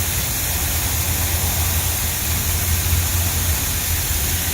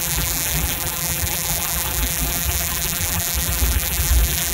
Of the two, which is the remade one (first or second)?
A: second